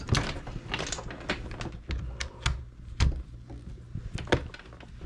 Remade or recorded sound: recorded